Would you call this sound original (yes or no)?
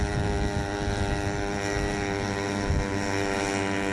yes